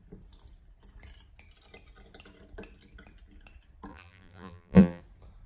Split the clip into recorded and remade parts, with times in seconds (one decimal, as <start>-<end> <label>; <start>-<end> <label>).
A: 0.0-3.9 recorded; 3.9-5.0 remade; 5.0-5.5 recorded